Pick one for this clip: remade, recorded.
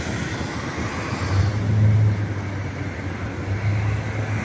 recorded